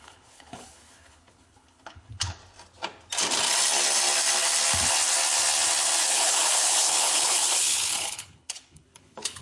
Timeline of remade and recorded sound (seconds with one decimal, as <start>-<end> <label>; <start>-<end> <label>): 0.0-2.4 remade; 2.4-6.1 recorded; 6.1-9.4 remade